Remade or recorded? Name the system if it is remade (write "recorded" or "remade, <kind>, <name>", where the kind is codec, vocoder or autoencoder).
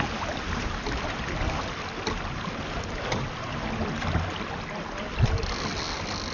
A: recorded